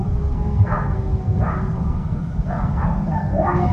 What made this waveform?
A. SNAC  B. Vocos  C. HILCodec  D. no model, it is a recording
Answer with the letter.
A